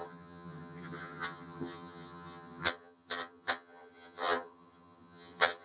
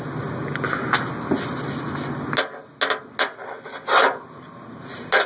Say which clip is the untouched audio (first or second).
second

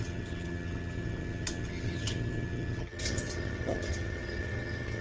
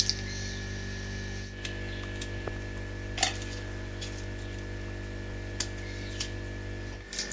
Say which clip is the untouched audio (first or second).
second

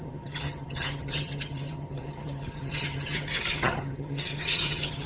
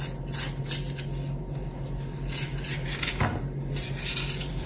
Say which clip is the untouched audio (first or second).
second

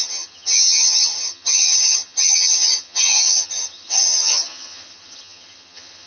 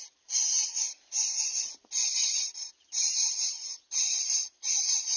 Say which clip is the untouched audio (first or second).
second